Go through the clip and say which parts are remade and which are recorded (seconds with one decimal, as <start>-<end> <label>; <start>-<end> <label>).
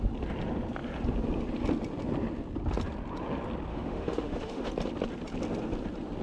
0.0-3.7 recorded; 3.7-4.7 remade; 4.7-6.2 recorded